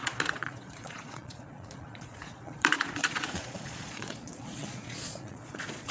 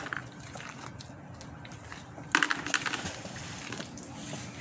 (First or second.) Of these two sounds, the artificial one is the first